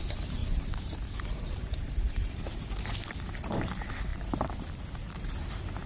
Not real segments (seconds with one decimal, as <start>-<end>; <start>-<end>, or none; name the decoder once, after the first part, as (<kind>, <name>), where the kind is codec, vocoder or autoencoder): 0.4-2.9 (vocoder, BigVGAN v2); 4.1-5.5